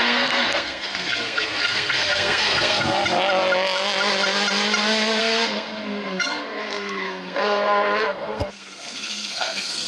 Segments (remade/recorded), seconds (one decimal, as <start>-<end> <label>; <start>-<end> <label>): 0.0-3.0 remade; 3.0-5.2 recorded; 5.2-9.9 remade